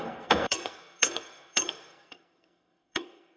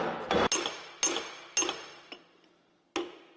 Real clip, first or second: second